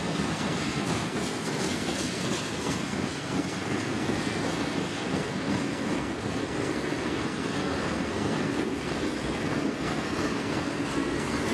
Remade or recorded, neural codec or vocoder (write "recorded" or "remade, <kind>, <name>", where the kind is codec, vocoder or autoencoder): remade, codec, SNAC